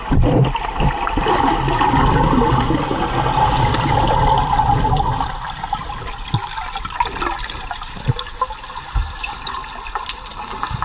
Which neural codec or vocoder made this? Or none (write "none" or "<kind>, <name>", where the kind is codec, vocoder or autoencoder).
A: none